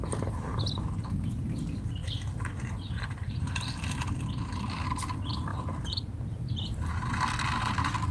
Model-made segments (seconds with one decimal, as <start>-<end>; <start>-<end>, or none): 2.0-4.1; 5.5-6.5

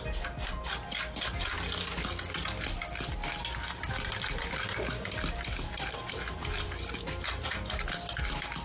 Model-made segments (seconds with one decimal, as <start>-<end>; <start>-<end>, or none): none

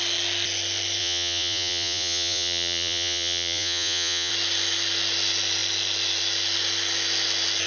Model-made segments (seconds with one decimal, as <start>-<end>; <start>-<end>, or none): 1.0-4.3

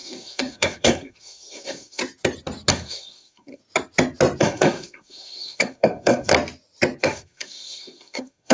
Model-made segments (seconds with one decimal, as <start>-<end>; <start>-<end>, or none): 0.0-2.0; 2.7-3.6; 4.4-6.3; 7.0-8.5

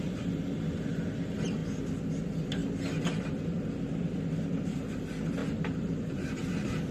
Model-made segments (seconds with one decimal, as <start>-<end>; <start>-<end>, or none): 5.4-6.4

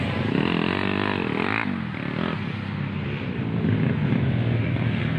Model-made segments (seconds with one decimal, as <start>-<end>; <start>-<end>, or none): none

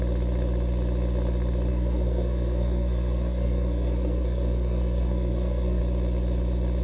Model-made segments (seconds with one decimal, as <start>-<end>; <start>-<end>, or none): 1.7-5.8